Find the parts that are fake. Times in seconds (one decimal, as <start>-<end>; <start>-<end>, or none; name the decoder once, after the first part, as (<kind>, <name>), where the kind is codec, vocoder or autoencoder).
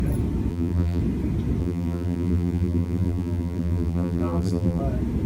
0.5-1.0 (vocoder, BigVGAN v2); 1.6-4.8